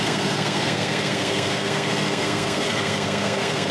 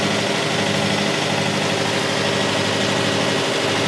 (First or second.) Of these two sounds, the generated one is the first